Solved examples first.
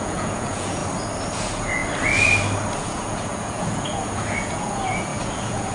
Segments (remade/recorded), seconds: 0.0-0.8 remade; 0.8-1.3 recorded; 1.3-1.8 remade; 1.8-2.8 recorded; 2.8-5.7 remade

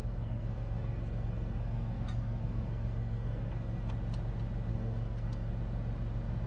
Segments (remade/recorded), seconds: 0.0-3.9 remade; 3.9-4.7 recorded; 4.7-5.5 remade; 5.5-6.5 recorded